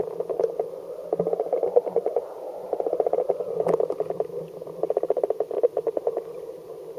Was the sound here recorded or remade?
recorded